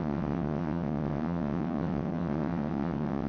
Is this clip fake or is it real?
fake